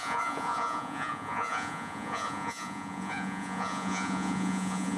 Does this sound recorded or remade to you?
remade